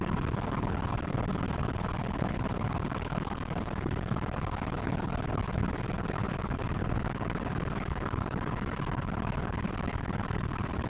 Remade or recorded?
remade